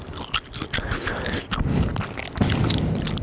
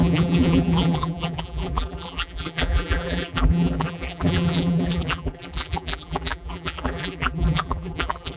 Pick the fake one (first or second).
second